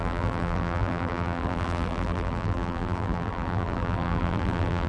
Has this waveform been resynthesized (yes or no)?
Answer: yes